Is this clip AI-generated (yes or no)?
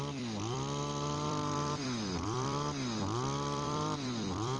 yes